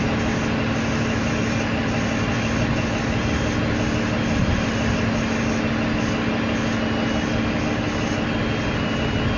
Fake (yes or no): no